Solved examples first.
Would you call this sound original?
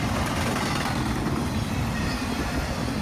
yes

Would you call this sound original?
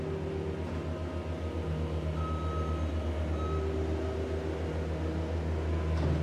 yes